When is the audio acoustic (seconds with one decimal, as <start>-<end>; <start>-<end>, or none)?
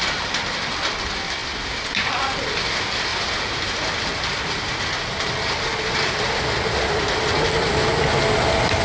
0.0-8.8